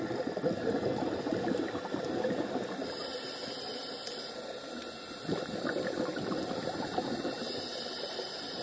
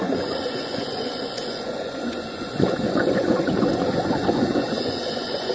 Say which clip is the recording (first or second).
first